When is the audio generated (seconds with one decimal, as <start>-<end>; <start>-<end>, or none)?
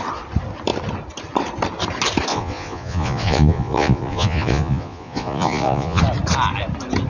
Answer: 2.3-6.0